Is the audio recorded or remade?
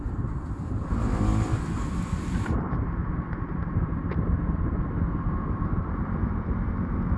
remade